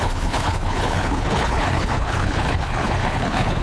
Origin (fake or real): fake